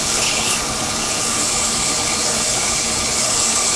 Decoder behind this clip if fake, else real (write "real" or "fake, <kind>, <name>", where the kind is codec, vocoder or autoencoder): fake, codec, HILCodec